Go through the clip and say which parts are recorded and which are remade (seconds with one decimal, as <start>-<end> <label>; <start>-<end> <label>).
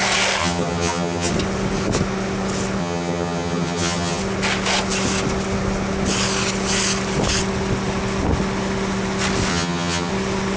0.0-0.4 recorded; 0.4-1.3 remade; 1.3-2.8 recorded; 2.8-4.2 remade; 4.2-9.5 recorded; 9.5-10.1 remade; 10.1-10.6 recorded